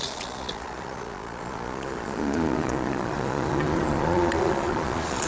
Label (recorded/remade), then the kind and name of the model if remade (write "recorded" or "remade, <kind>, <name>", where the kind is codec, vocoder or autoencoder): remade, vocoder, Vocos